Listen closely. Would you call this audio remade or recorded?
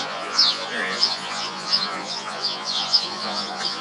remade